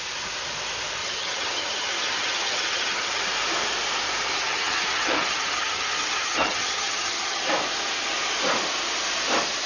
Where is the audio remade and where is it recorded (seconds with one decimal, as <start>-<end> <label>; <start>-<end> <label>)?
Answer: 0.0-1.0 recorded; 1.0-3.2 remade; 3.2-4.4 recorded; 4.4-7.4 remade; 7.4-9.7 recorded